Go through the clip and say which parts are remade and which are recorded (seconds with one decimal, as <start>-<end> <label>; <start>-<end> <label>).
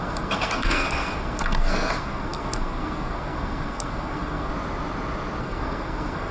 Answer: 0.0-4.5 remade; 4.5-5.4 recorded; 5.4-6.3 remade